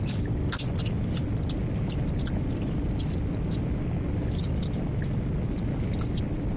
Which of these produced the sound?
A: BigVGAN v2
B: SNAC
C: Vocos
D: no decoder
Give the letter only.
D